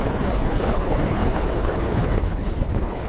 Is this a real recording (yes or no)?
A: no